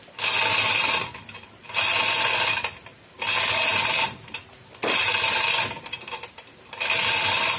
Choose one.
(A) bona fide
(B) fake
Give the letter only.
A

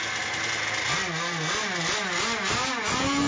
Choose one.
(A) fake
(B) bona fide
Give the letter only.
B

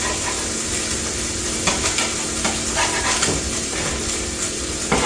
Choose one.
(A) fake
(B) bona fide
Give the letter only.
B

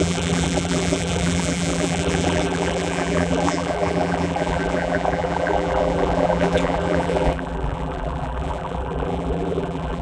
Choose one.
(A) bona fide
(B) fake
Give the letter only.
B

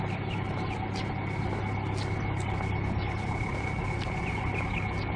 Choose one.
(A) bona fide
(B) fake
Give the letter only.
A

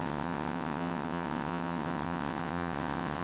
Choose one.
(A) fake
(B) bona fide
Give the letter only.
A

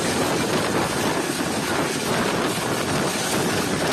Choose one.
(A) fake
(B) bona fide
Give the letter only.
B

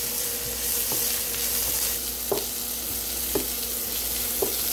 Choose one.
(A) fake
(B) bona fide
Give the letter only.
B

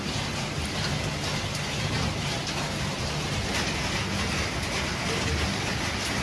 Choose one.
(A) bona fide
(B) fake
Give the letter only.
A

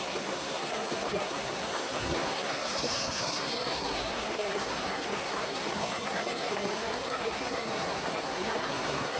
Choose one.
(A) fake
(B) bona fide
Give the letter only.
A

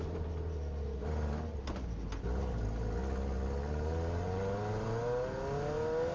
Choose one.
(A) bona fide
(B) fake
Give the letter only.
A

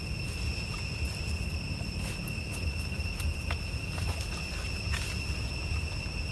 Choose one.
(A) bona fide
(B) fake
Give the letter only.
A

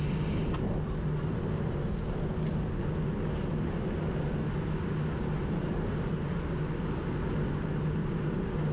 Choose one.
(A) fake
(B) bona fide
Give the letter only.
B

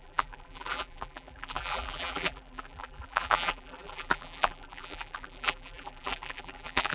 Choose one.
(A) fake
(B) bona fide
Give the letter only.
A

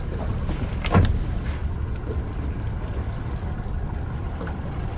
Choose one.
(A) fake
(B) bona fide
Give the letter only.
B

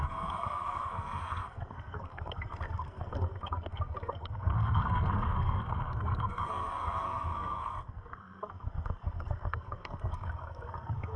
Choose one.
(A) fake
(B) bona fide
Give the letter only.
A